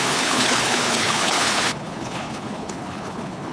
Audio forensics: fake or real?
fake